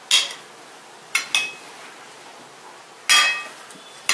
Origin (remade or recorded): recorded